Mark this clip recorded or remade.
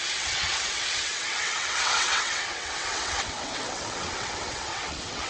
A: remade